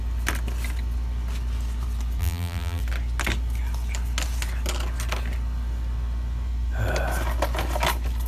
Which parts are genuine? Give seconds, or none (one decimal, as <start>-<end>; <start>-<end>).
0.0-2.2; 2.8-8.3